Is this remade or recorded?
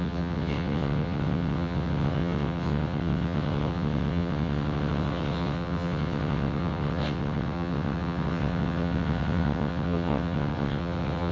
remade